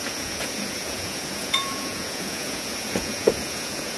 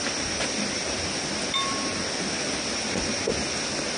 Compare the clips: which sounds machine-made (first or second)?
first